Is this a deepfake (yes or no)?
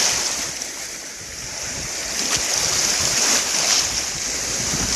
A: no